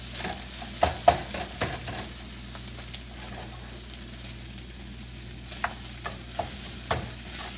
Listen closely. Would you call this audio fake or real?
real